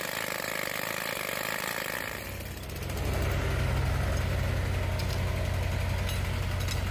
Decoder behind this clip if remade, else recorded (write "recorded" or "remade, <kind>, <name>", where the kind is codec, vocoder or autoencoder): recorded